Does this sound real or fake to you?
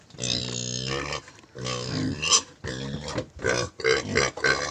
real